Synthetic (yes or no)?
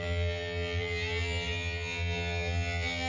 yes